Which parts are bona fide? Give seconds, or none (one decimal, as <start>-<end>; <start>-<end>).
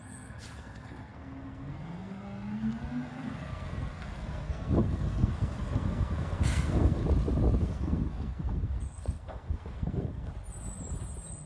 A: 7.0-7.6; 10.3-11.5